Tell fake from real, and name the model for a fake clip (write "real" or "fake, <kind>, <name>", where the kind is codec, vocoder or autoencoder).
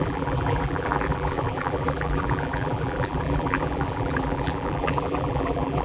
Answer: fake, vocoder, BigVGAN v2